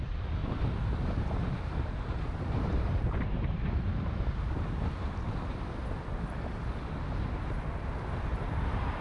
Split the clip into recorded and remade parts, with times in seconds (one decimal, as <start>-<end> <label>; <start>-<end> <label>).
0.0-0.4 recorded; 0.4-4.3 remade; 4.3-9.0 recorded